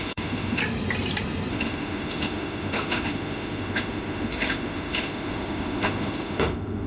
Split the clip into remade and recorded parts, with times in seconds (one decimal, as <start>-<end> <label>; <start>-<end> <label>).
0.0-0.6 remade; 0.6-1.5 recorded; 1.5-6.9 remade